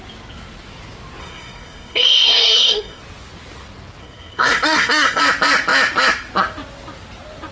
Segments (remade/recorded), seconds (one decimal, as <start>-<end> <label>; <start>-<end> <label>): 0.0-1.2 recorded; 1.2-3.0 remade; 3.0-4.0 recorded; 4.0-5.2 remade; 5.2-7.5 recorded